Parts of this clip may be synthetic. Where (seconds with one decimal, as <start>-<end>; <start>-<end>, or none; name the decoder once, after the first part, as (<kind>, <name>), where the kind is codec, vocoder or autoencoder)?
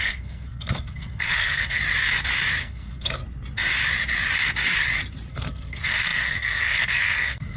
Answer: 0.0-1.8 (codec, SNAC); 2.6-3.2; 5.3-7.6